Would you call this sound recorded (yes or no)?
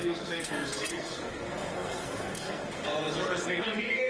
no